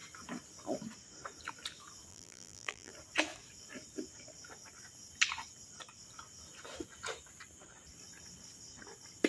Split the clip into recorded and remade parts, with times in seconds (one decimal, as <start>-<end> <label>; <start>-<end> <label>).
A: 0.0-2.1 recorded; 2.1-2.9 remade; 2.9-9.3 recorded